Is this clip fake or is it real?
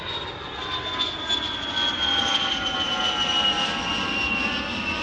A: real